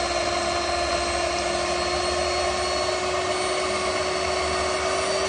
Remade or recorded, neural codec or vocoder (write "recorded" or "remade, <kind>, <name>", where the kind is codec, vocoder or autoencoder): recorded